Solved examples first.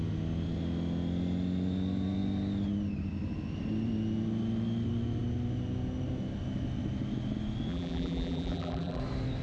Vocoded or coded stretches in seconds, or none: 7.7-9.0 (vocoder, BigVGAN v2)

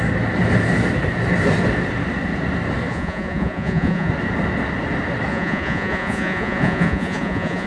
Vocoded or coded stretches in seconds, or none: 2.9-4.1 (vocoder, Vocos); 5.3-7.7

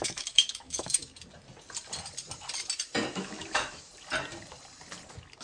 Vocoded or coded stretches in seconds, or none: 0.0-1.0 (autoencoder, DAC-VAE); 3.1-3.9

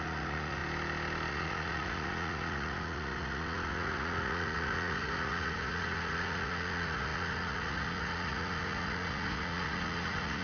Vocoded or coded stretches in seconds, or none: 0.0-0.6 (vocoder, Vocos); 1.3-10.4

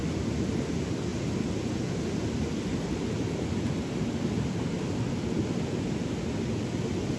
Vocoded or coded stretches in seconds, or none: none

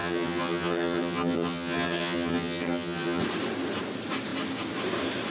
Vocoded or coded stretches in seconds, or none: 0.0-3.2 (vocoder, HiFi-GAN)

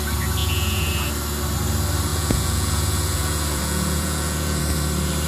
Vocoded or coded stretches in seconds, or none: 0.4-0.9 (vocoder, Vocos); 2.1-4.6